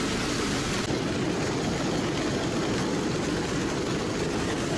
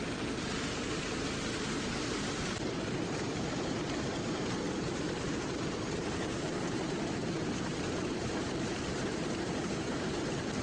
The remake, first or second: second